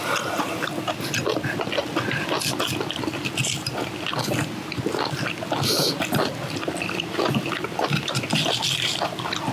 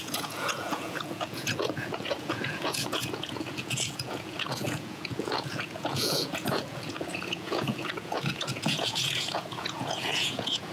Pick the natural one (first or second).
first